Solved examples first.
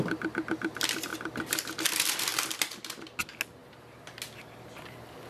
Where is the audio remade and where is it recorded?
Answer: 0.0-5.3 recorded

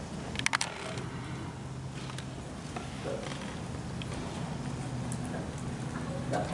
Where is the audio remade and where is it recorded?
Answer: 0.0-6.5 recorded

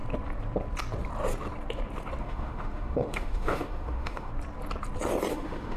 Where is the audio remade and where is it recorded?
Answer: 0.0-2.2 recorded; 2.2-4.3 remade; 4.3-5.3 recorded; 5.3-5.8 remade

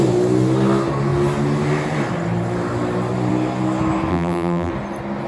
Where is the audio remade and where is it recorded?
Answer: 0.0-4.1 recorded; 4.1-4.7 remade; 4.7-5.3 recorded